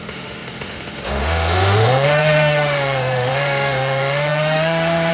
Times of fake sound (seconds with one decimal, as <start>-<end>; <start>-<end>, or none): 0.0-5.1